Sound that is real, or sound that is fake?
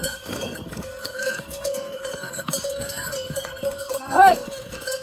fake